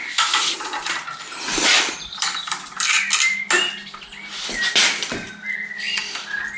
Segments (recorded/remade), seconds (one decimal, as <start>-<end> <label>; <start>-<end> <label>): 0.0-0.9 remade; 0.9-1.5 recorded; 1.5-3.0 remade; 3.0-6.6 recorded